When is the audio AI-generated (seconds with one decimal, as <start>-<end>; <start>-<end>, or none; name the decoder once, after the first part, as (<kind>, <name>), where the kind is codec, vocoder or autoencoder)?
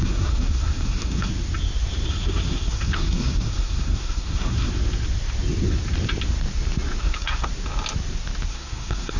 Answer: 0.0-1.3 (codec, SNAC); 2.1-4.7; 7.0-7.5; 8.5-9.2